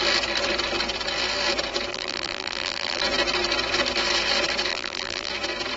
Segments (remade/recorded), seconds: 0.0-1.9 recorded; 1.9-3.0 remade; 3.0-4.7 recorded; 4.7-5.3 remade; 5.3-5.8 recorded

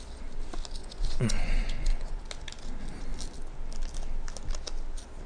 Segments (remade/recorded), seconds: 0.0-0.8 recorded; 0.8-2.2 remade; 2.2-5.3 recorded

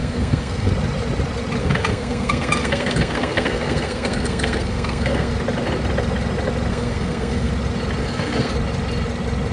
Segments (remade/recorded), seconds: 0.0-0.7 remade; 0.7-1.6 recorded; 1.6-5.3 remade; 5.3-6.7 recorded; 6.7-7.5 remade; 7.5-8.0 recorded; 8.0-8.5 remade; 8.5-9.5 recorded

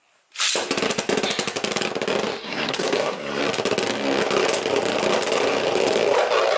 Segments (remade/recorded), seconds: 0.0-2.4 recorded; 2.4-3.4 remade; 3.4-6.6 recorded

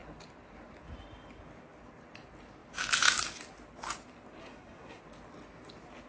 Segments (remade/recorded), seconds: 0.0-4.4 recorded; 4.4-5.0 remade; 5.0-6.1 recorded

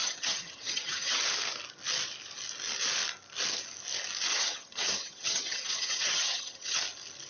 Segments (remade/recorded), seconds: 0.0-1.2 remade; 1.2-4.3 recorded; 4.3-6.8 remade; 6.8-7.3 recorded